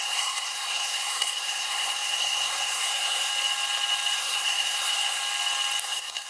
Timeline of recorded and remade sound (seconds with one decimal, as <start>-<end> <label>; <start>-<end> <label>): 0.0-3.3 remade; 3.3-4.1 recorded; 4.1-5.2 remade; 5.2-5.8 recorded; 5.8-6.3 remade